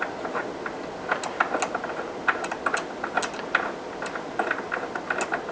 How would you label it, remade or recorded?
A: recorded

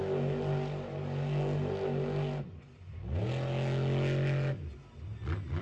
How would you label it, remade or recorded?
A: recorded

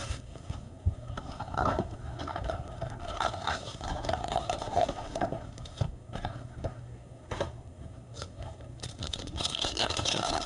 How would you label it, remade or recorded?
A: remade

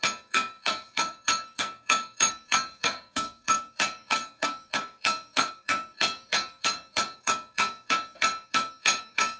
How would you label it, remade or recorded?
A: remade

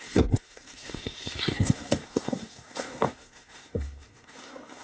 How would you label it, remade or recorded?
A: remade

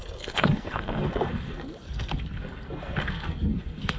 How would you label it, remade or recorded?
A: remade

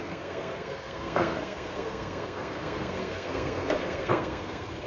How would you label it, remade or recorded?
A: remade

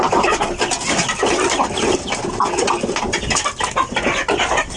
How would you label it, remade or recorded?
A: recorded